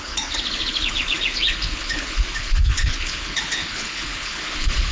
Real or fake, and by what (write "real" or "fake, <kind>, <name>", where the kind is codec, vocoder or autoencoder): fake, codec, HILCodec